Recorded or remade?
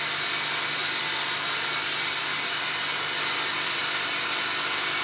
recorded